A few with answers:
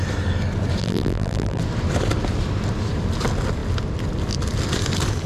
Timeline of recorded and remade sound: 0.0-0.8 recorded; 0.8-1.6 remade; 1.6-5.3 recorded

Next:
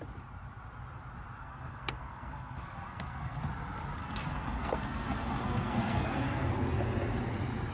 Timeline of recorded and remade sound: 0.0-1.4 recorded; 1.4-3.4 remade; 3.4-4.0 recorded; 4.0-6.5 remade; 6.5-7.7 recorded

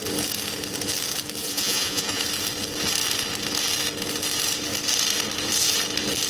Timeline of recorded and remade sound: 0.0-1.4 recorded; 1.4-2.2 remade; 2.2-6.3 recorded